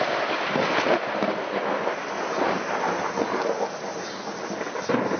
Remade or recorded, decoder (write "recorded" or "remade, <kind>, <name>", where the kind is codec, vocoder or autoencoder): recorded